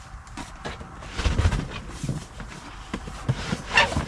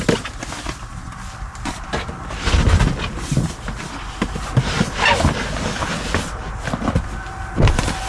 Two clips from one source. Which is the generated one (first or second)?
first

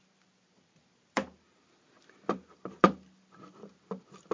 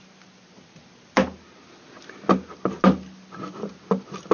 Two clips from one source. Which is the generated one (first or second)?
first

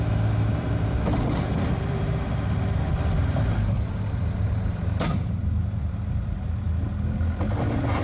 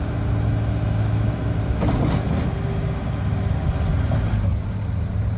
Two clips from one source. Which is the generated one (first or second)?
first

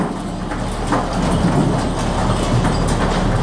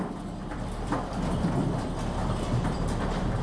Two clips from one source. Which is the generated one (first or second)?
second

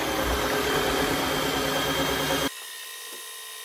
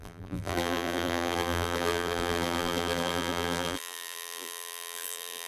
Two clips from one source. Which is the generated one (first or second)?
second